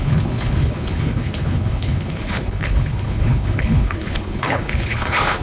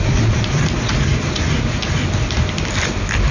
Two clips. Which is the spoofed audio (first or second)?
first